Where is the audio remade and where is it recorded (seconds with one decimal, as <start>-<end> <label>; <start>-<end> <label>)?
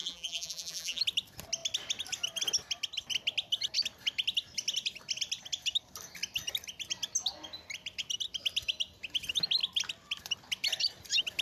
0.0-1.0 remade; 1.0-11.4 recorded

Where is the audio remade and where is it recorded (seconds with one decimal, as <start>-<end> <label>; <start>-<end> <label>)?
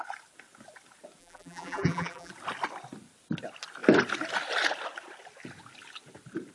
0.0-1.2 recorded; 1.2-2.3 remade; 2.3-6.5 recorded